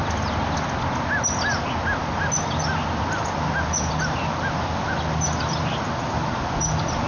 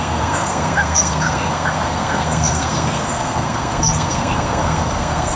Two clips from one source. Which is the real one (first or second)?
first